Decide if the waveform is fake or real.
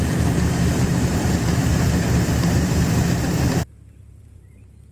fake